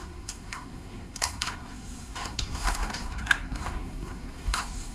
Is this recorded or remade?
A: remade